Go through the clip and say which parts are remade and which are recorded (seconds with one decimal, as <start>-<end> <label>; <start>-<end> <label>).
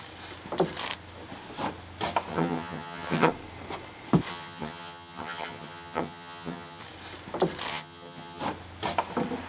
0.0-2.3 recorded; 2.3-3.3 remade; 3.3-4.3 recorded; 4.3-6.8 remade; 6.8-7.7 recorded; 7.7-8.4 remade; 8.4-9.5 recorded